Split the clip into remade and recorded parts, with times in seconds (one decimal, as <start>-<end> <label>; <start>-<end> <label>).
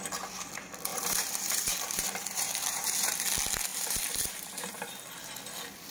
0.0-0.9 recorded; 0.9-3.3 remade; 3.3-3.7 recorded; 3.7-5.1 remade; 5.1-5.9 recorded